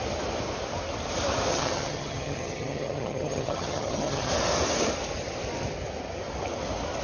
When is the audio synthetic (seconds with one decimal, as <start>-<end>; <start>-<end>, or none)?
1.5-4.3